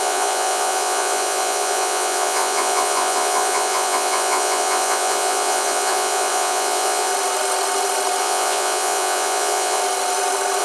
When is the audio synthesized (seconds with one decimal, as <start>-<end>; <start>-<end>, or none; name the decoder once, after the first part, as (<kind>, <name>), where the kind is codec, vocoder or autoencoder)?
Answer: 0.0-7.1 (vocoder, Vocos); 8.2-9.8